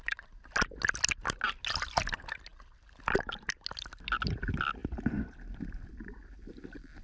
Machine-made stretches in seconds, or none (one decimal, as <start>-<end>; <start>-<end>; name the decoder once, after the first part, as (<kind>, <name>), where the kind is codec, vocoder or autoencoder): none